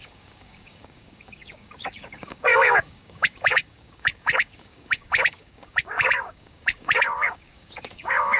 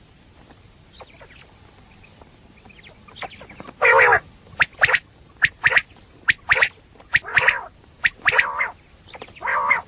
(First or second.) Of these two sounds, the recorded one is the second